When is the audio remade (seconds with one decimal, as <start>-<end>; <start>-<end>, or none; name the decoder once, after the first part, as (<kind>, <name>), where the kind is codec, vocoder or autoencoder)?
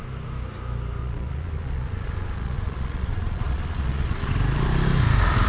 1.0-4.3 (vocoder, Vocos)